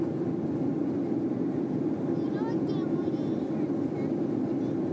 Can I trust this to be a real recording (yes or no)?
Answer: yes